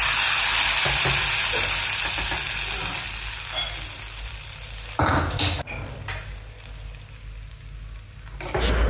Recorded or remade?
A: recorded